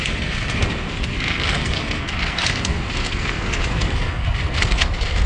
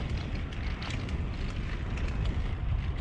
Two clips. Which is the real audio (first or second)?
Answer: second